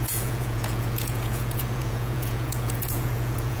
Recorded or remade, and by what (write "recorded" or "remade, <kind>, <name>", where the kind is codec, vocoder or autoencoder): remade, vocoder, Vocos